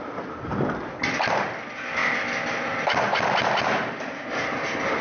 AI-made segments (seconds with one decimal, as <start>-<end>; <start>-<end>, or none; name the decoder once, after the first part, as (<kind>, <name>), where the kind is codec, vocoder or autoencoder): 2.0-5.0 (vocoder, BigVGAN v2)